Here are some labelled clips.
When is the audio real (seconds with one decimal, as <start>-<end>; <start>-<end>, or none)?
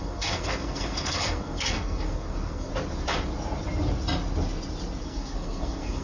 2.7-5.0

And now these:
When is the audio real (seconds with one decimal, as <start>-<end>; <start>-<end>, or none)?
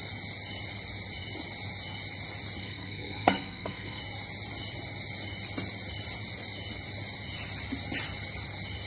0.0-2.6; 4.0-8.9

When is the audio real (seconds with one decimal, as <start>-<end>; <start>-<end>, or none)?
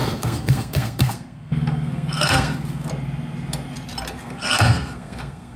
2.9-4.2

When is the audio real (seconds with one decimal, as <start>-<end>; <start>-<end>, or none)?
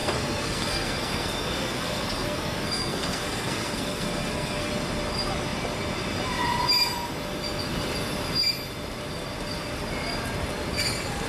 4.7-11.3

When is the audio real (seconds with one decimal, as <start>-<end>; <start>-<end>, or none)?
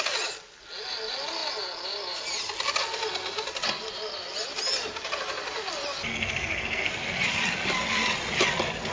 0.0-6.1; 6.9-8.9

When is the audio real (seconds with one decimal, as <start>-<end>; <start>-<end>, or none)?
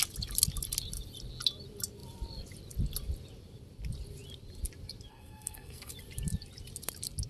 0.0-5.1; 5.9-7.3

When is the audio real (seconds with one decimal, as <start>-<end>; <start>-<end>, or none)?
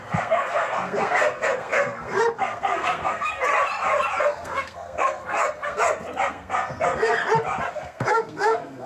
3.5-4.2; 5.8-6.3; 7.2-7.7